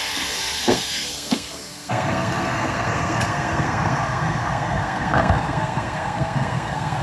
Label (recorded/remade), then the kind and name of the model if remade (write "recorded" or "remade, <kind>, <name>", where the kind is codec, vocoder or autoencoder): remade, codec, SNAC